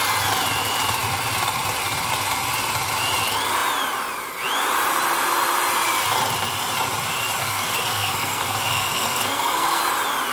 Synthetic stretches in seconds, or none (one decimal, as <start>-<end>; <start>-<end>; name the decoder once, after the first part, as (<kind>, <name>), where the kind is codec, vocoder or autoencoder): 7.4-9.8 (codec, SNAC)